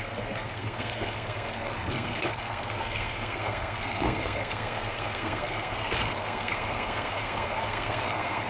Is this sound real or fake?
fake